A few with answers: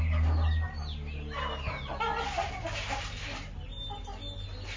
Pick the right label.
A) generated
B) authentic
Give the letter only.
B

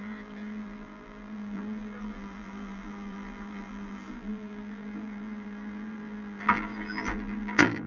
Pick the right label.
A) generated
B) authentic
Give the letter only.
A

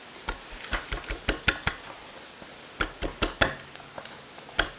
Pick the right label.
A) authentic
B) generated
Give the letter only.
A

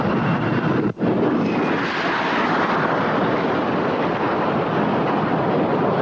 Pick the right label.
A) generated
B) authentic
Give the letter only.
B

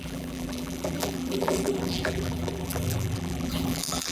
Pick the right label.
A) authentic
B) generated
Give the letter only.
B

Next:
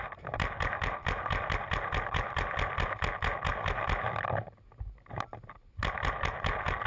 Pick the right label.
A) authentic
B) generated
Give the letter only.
A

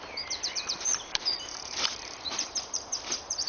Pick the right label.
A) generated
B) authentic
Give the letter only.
A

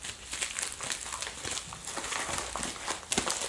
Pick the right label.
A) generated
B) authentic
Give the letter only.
B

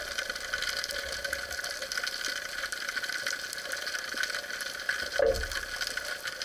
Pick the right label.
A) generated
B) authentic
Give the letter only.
B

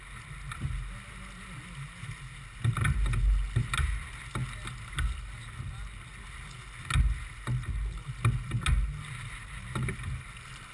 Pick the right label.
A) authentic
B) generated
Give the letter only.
A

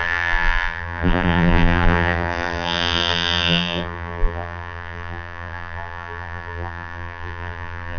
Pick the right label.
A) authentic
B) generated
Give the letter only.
B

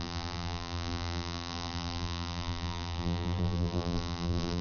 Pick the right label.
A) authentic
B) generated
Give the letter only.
B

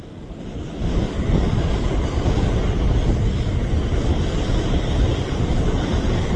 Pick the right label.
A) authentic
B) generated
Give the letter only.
A